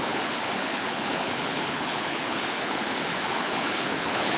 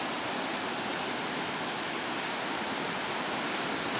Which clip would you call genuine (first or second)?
second